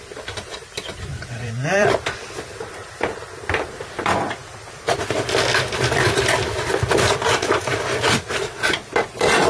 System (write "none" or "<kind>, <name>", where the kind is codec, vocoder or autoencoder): vocoder, BigVGAN v2